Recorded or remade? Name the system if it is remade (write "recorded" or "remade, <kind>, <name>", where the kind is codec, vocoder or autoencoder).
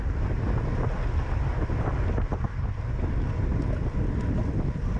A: recorded